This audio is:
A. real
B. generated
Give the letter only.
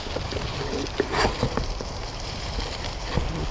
A